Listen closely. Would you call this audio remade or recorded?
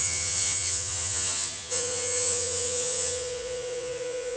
remade